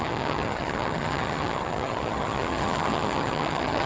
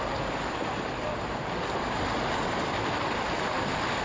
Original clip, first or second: second